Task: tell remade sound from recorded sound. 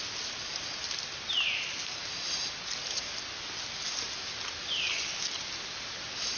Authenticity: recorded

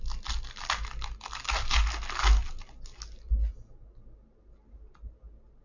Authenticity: recorded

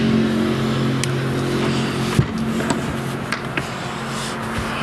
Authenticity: recorded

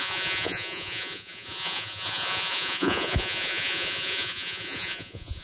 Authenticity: remade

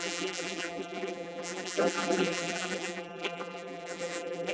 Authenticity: remade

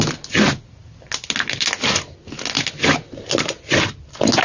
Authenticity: recorded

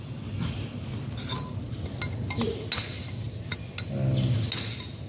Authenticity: recorded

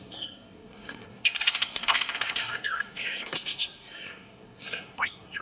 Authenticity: remade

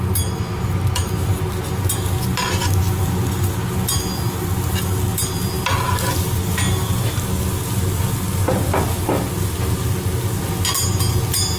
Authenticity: recorded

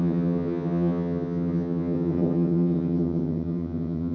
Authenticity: remade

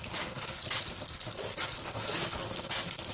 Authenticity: recorded